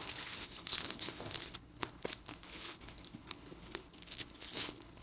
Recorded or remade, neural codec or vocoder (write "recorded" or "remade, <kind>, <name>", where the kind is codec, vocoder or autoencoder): remade, codec, HILCodec